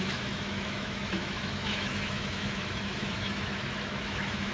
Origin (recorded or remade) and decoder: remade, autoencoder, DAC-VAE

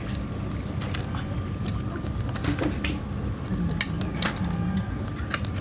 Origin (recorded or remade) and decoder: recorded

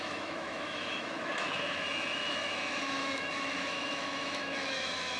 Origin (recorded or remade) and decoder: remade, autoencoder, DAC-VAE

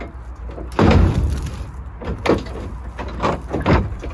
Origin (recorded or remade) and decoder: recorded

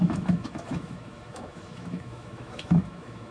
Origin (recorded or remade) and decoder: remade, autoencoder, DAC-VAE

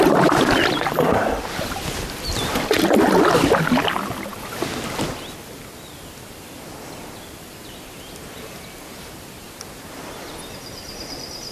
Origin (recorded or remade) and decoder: recorded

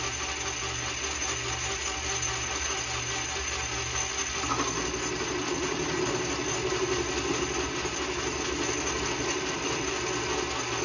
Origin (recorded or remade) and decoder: recorded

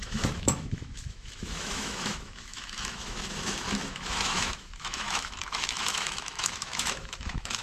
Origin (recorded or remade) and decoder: remade, autoencoder, DAC-VAE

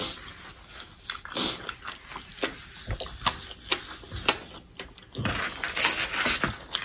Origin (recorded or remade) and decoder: recorded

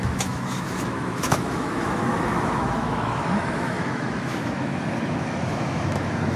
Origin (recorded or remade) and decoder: remade, autoencoder, DAC-VAE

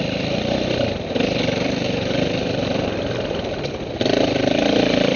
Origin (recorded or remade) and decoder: recorded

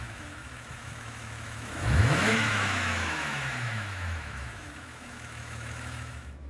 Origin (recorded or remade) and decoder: remade, autoencoder, DAC-VAE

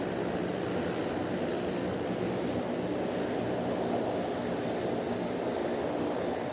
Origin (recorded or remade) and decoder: recorded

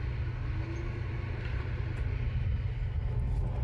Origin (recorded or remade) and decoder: recorded